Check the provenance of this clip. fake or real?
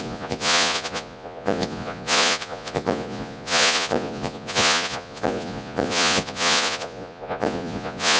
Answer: fake